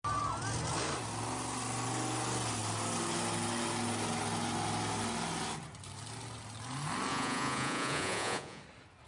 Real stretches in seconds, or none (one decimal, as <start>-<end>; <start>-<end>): 0.0-7.1; 8.6-9.1